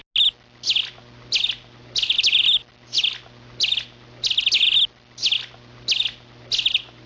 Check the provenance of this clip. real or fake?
real